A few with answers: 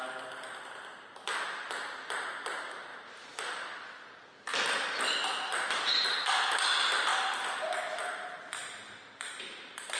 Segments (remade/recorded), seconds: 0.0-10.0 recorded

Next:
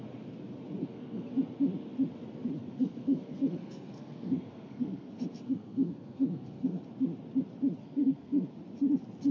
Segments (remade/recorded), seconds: 0.0-0.8 recorded; 0.8-1.3 remade; 1.3-2.6 recorded; 2.6-6.8 remade; 6.8-7.8 recorded; 7.8-8.6 remade; 8.6-9.3 recorded

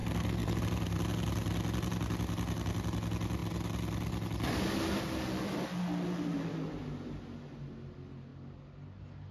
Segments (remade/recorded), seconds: 0.0-0.6 remade; 0.6-9.3 recorded

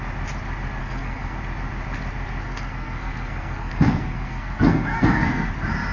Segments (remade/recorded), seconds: 0.0-0.8 recorded; 0.8-1.4 remade; 1.4-2.4 recorded; 2.4-5.5 remade; 5.5-5.9 recorded

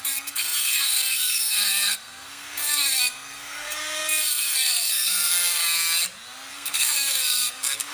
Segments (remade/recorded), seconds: 0.0-5.6 remade; 5.6-6.5 recorded; 6.5-7.9 remade

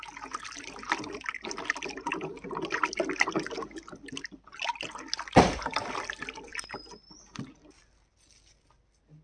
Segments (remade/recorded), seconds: 0.0-9.2 recorded

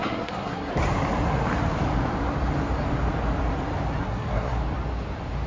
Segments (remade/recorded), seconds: 0.0-0.7 remade; 0.7-4.0 recorded; 4.0-4.6 remade; 4.6-5.5 recorded

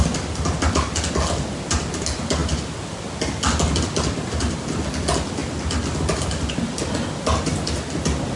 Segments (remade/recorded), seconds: 0.0-8.4 recorded